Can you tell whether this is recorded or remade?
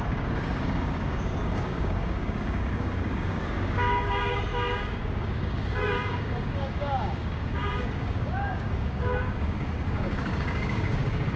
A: remade